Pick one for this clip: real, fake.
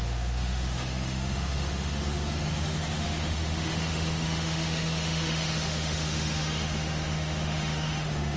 fake